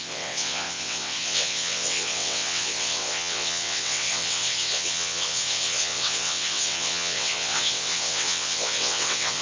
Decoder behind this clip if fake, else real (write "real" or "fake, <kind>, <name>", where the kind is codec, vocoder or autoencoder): fake, vocoder, WaveNeXt